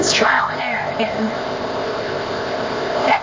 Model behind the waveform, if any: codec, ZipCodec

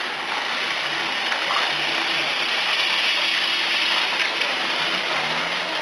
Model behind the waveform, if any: vocoder, BigVGAN v2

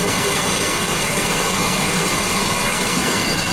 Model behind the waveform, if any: codec, SNAC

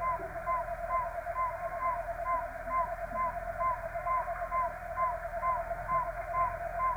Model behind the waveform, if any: none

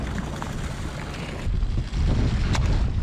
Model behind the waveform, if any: none